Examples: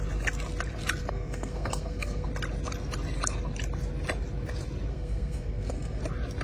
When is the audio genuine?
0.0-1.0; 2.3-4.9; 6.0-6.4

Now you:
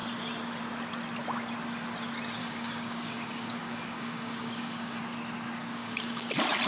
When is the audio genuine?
0.0-2.4; 5.0-5.8; 6.3-6.7